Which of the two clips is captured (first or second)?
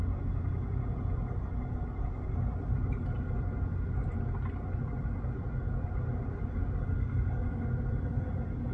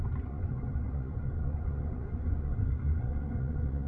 first